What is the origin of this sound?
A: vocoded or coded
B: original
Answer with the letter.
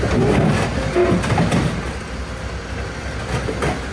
B